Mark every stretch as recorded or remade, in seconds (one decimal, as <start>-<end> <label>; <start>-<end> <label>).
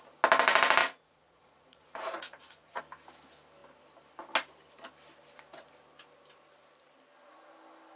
0.0-0.8 recorded; 0.8-2.8 remade; 2.8-8.0 recorded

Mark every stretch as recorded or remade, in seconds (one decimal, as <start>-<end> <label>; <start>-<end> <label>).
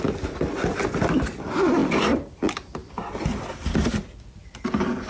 0.0-5.1 recorded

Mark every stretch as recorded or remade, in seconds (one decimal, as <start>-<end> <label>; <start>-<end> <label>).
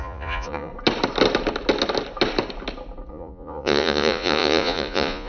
0.0-0.7 remade; 0.7-3.1 recorded; 3.1-5.3 remade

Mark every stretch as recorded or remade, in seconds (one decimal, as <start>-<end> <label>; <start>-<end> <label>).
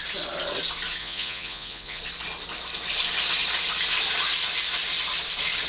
0.0-1.0 recorded; 1.0-2.0 remade; 2.0-5.7 recorded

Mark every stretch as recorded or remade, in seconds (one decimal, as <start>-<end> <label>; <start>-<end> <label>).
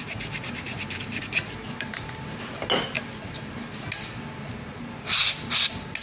0.0-6.0 recorded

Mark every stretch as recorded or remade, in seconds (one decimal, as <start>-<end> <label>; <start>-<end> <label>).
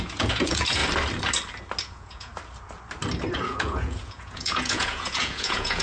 0.0-0.8 remade; 0.8-1.8 recorded; 1.8-2.3 remade; 2.3-3.3 recorded; 3.3-5.8 remade